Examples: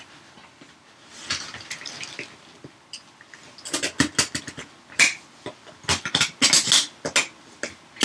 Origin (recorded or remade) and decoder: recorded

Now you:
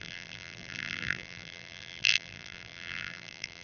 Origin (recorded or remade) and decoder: remade, vocoder, BigVGAN v2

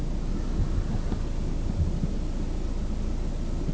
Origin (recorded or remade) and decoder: recorded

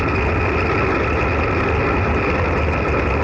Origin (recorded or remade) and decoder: recorded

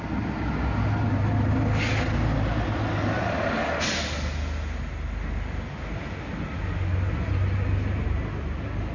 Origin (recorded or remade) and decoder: recorded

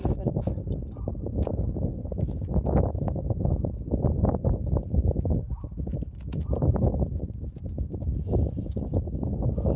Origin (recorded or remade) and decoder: recorded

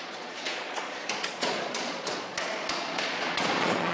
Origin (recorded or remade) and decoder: remade, vocoder, Vocos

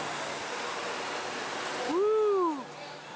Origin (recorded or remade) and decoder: recorded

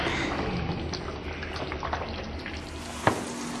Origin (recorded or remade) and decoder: recorded